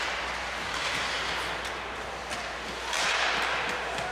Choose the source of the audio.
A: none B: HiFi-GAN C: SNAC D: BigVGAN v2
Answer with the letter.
A